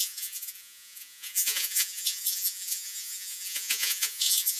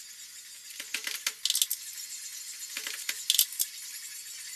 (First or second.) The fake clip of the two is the first